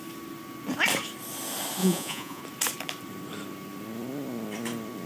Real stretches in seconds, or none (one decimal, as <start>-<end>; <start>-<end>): 0.0-1.8; 2.4-5.1

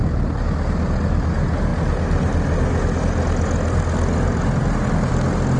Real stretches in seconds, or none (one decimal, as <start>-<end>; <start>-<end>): 0.0-5.6

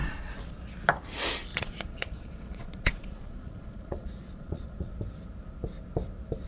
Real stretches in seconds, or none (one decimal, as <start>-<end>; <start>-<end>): 0.0-1.5; 4.9-6.5

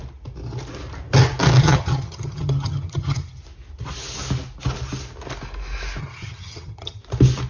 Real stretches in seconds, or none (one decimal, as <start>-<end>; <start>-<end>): 0.0-1.6; 3.4-6.0; 7.0-7.5

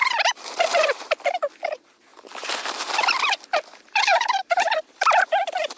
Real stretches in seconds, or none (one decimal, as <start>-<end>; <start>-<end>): 1.1-2.1; 2.9-3.7